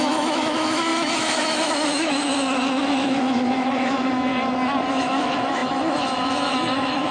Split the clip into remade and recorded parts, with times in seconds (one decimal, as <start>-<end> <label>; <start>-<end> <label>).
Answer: 0.0-4.3 remade; 4.3-4.9 recorded; 4.9-7.1 remade